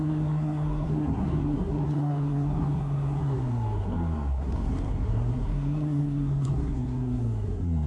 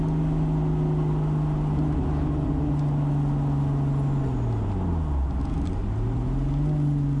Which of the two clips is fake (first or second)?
first